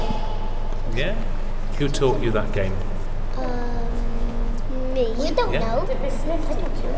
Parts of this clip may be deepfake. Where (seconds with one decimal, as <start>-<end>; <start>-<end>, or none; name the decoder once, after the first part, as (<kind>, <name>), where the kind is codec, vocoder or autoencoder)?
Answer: 3.9-4.5 (vocoder, Vocos)